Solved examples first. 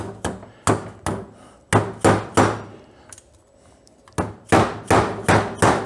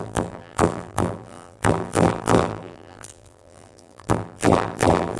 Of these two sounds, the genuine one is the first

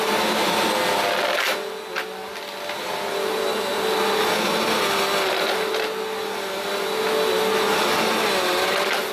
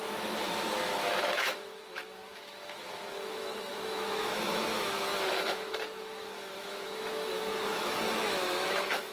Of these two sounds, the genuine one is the first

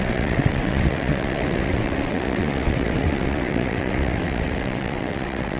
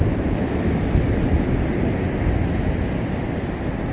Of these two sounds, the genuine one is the second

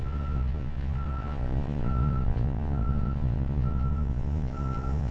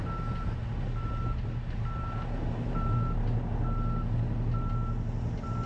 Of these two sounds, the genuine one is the second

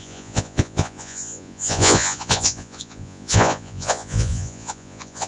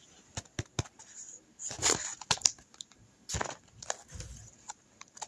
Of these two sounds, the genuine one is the second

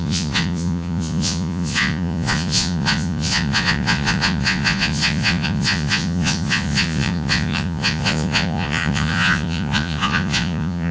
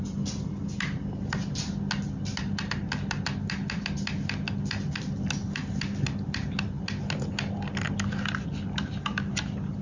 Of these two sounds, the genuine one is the second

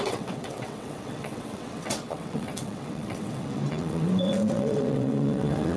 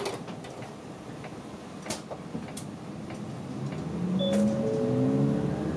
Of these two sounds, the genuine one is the second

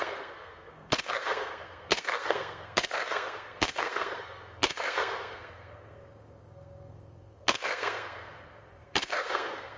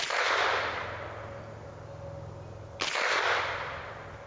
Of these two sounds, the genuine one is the second